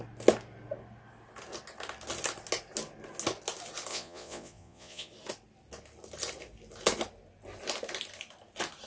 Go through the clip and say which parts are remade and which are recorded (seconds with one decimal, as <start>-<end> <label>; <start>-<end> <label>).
0.0-3.9 recorded; 3.9-5.1 remade; 5.1-8.9 recorded